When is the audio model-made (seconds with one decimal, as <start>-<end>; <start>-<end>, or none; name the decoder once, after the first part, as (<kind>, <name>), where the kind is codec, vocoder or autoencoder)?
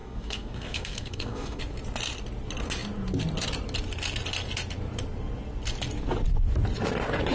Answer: 0.0-1.6 (codec, SNAC)